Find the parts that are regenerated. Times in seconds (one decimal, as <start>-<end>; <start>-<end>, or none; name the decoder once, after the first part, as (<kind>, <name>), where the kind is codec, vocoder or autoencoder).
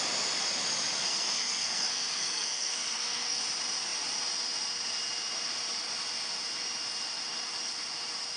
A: 1.0-3.4 (codec, SNAC)